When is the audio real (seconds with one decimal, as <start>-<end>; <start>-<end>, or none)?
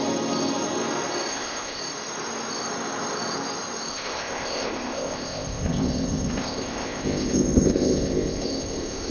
0.0-1.3; 1.8-3.9